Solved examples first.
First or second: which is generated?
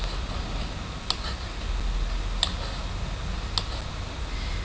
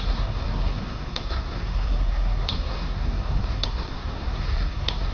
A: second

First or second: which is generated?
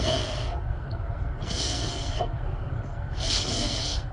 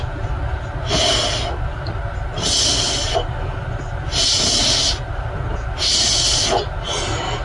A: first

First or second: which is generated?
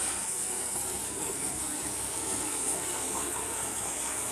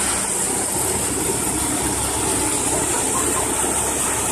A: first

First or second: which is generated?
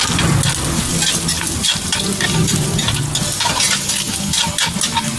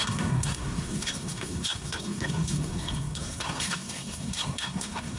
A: second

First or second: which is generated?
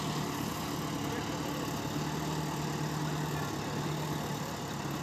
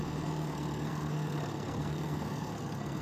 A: second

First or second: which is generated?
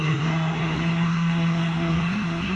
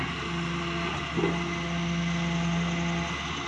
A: first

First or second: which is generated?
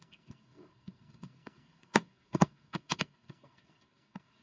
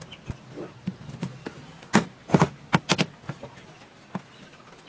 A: first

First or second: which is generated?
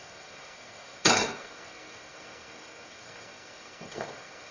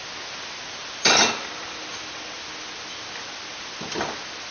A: first